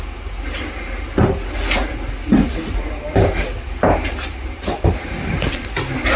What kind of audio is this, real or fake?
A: real